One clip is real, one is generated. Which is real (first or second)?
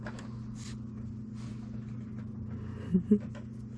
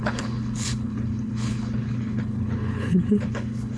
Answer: first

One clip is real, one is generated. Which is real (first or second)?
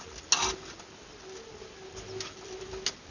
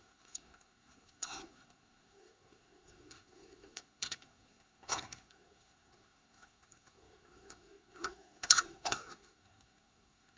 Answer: first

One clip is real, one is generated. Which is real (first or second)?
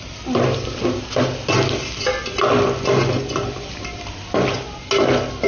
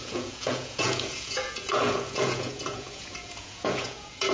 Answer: first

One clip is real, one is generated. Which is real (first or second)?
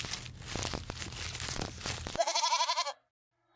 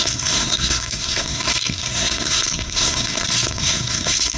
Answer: first